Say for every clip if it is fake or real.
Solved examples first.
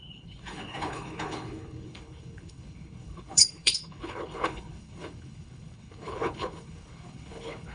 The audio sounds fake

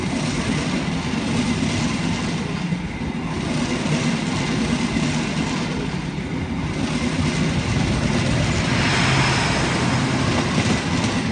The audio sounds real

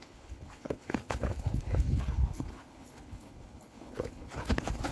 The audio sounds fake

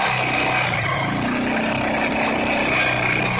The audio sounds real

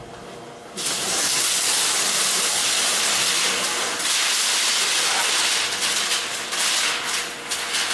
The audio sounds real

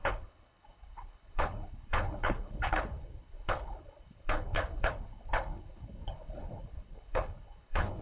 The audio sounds fake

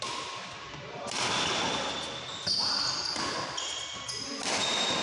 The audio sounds real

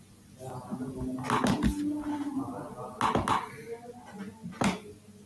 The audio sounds real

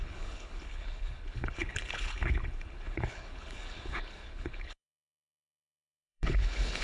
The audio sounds fake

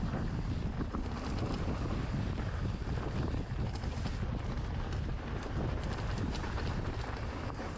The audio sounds real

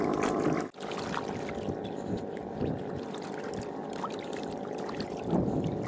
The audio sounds real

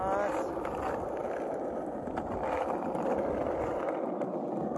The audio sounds real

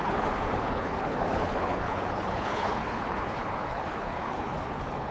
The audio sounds fake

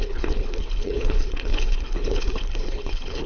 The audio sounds fake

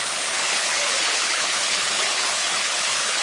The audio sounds fake